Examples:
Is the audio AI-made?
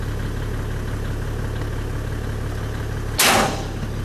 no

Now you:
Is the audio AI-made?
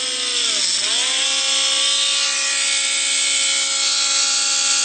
no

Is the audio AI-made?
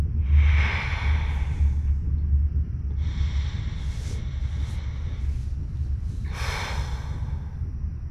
no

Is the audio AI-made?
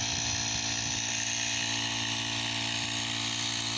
no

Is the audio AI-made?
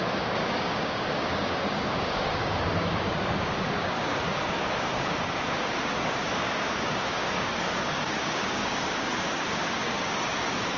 yes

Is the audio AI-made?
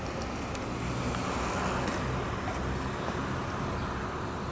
no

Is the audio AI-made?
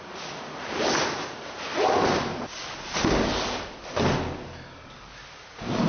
no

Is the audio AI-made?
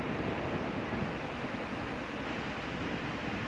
no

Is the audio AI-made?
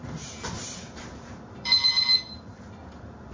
yes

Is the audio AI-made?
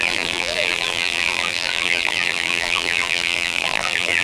yes